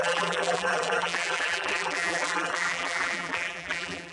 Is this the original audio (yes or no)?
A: no